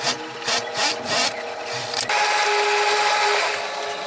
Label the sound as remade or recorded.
recorded